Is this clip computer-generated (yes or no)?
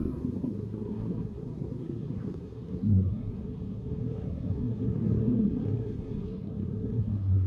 yes